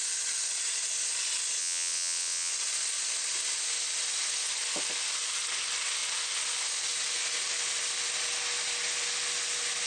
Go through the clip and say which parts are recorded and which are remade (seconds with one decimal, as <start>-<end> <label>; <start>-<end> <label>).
0.0-1.6 recorded; 1.6-2.5 remade; 2.5-9.9 recorded